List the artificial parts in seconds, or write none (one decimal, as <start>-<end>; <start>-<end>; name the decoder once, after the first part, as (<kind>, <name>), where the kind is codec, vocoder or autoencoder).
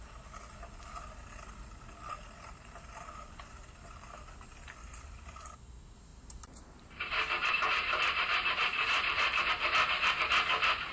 6.1-9.5 (vocoder, BigVGAN v2)